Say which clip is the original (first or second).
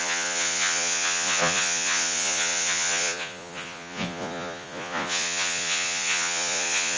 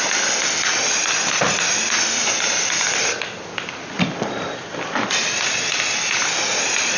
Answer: second